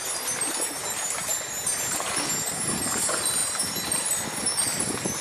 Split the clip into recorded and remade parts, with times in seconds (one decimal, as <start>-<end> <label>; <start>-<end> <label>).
0.0-5.2 recorded